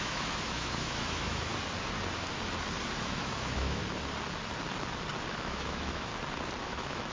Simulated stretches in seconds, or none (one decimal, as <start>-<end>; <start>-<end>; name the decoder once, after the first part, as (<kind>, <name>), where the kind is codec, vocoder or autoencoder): 0.0-1.5 (autoencoder, DAC-VAE); 3.0-3.8; 5.3-6.1; 6.6-7.1